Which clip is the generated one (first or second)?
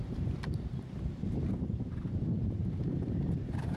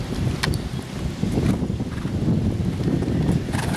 first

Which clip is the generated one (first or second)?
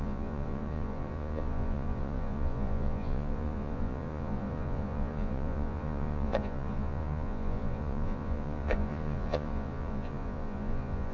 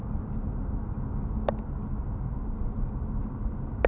first